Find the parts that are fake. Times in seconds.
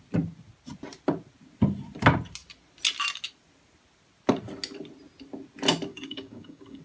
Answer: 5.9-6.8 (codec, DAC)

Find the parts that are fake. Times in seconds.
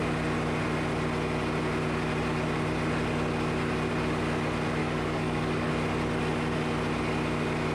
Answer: 4.8-5.7 (codec, DAC)